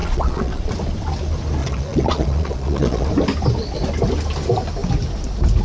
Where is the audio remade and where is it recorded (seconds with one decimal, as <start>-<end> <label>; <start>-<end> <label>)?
0.0-0.7 remade; 0.7-1.6 recorded; 1.6-3.1 remade; 3.1-5.6 recorded